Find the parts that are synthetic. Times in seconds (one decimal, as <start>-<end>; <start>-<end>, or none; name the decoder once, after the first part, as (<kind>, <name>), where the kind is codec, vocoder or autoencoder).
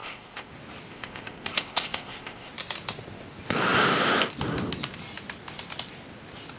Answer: 0.0-0.5 (codec, ZipCodec); 0.9-2.5